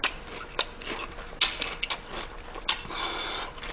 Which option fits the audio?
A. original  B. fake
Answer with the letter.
A